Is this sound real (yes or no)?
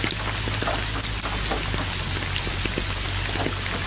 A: yes